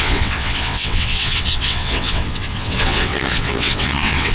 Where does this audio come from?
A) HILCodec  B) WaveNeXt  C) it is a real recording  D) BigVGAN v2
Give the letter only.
B